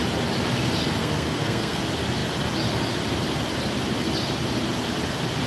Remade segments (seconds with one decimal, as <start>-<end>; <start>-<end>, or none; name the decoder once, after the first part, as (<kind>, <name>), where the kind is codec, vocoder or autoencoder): 1.0-1.8 (codec, SNAC)